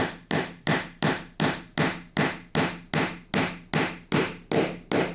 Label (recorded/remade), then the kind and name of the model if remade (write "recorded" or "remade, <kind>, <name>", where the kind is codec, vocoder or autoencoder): recorded